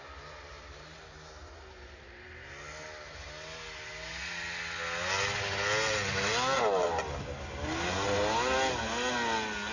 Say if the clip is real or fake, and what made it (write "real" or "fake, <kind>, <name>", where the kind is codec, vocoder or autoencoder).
real